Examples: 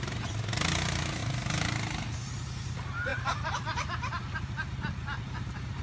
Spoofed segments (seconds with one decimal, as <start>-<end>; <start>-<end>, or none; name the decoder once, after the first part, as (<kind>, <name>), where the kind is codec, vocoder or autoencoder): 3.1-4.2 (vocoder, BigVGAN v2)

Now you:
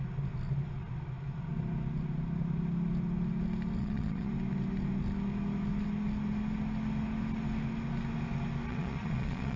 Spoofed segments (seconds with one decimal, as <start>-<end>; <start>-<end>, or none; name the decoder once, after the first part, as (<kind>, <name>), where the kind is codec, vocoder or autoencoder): 3.8-4.3 (vocoder, Vocos); 8.7-9.6

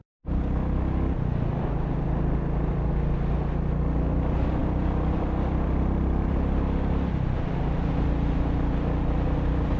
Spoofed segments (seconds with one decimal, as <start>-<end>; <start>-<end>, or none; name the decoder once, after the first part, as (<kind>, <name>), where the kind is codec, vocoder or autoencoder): none

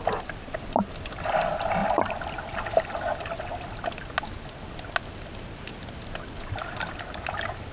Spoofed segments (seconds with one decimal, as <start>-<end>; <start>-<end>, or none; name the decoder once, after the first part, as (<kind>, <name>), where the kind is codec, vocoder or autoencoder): none

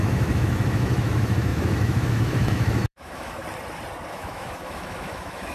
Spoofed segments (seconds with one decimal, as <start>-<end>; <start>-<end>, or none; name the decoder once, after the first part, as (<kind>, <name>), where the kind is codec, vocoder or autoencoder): 0.0-3.4 (autoencoder, DAC-VAE); 4.1-5.5